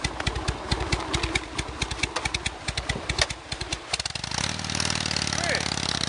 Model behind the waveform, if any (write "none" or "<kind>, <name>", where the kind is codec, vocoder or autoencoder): none